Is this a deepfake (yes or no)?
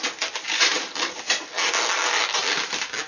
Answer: no